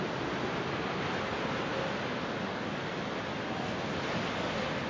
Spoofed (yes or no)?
no